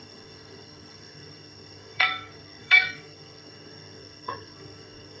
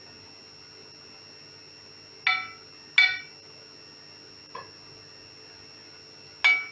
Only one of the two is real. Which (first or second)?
second